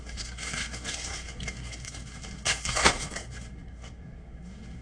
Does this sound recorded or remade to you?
remade